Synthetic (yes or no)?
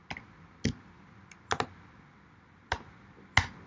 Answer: no